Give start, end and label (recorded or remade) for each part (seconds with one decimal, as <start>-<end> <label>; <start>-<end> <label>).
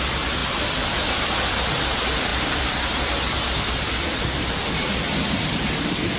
0.0-2.3 recorded; 2.3-6.2 remade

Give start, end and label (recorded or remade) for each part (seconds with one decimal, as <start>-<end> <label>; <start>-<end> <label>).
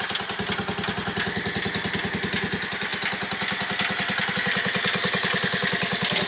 0.0-6.3 recorded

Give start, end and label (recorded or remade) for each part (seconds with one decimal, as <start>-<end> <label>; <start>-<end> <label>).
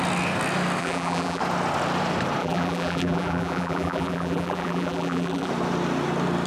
0.0-0.8 recorded; 0.8-1.4 remade; 1.4-2.4 recorded; 2.4-5.5 remade; 5.5-6.5 recorded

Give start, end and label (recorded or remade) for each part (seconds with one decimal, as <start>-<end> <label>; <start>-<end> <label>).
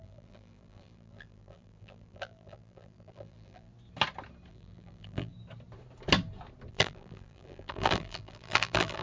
0.0-3.7 remade; 3.7-4.5 recorded; 4.5-5.3 remade; 5.3-6.7 recorded; 6.7-9.0 remade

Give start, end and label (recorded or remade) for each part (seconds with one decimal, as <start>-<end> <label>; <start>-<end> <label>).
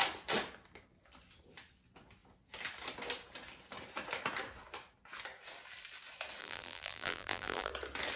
0.0-6.4 recorded; 6.4-7.7 remade; 7.7-8.2 recorded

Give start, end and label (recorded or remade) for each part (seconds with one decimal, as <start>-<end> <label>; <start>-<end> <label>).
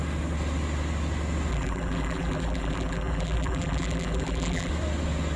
0.0-1.5 recorded; 1.5-4.7 remade; 4.7-5.4 recorded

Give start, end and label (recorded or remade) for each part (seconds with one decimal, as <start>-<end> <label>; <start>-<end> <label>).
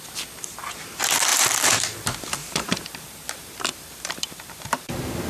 0.0-1.3 recorded; 1.3-1.8 remade; 1.8-2.4 recorded; 2.4-5.3 remade